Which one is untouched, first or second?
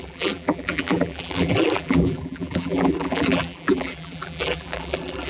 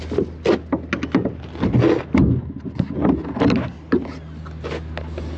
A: second